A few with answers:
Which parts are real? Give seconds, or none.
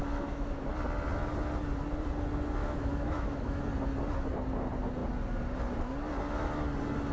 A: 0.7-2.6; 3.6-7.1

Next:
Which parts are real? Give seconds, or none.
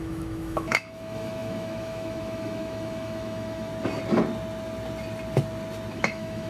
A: 3.7-5.9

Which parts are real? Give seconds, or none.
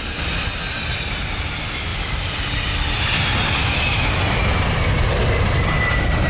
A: 0.0-3.6; 4.2-6.3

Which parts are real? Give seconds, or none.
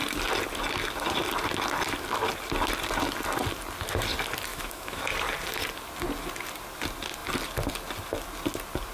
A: 0.0-4.5; 5.0-8.9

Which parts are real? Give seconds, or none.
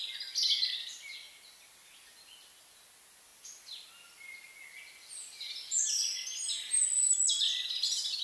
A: 0.0-8.2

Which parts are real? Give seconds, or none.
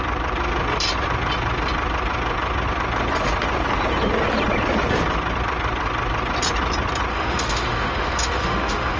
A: 0.0-7.1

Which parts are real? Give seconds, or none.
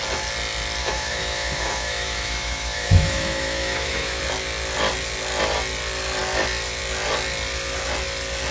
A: 0.0-0.8; 4.2-8.5